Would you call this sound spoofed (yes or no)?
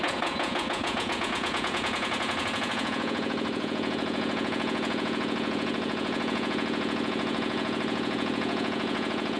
yes